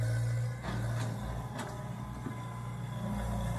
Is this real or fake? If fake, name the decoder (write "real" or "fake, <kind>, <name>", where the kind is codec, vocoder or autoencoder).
real